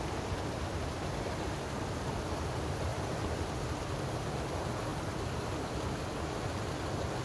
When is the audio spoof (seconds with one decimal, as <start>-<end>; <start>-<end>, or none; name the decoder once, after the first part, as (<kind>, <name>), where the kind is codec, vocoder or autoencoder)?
none